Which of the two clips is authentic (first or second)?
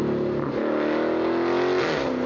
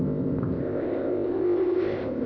first